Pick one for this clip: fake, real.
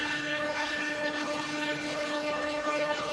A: fake